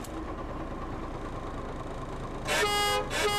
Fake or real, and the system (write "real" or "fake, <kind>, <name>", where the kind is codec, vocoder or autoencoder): real